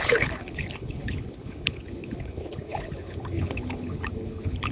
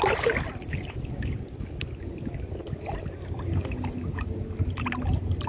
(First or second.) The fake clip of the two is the first